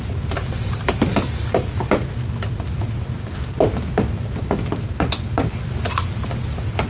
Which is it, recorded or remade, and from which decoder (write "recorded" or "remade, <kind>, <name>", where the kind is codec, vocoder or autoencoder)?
recorded